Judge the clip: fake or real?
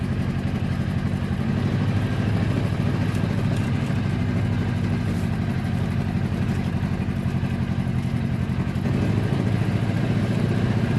real